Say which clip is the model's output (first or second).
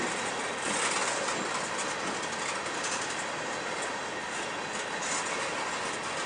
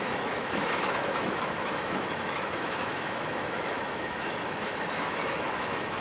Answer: second